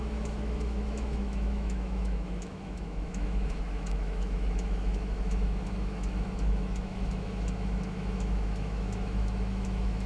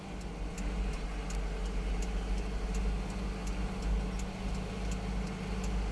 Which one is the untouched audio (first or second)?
second